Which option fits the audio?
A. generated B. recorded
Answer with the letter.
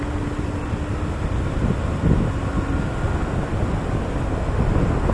B